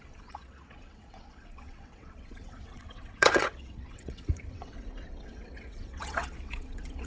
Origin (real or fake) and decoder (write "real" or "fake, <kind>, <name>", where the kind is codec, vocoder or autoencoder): fake, vocoder, WaveNeXt